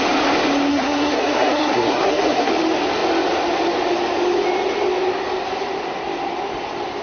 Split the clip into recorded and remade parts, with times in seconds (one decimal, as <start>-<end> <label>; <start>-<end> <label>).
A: 0.0-0.7 recorded; 0.7-2.5 remade; 2.5-7.0 recorded